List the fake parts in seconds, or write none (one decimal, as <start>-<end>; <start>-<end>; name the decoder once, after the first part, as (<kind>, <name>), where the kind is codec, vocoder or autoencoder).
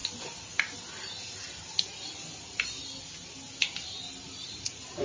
none